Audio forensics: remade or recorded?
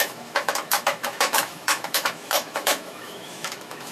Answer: remade